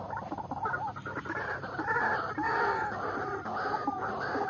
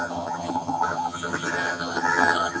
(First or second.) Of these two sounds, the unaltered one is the first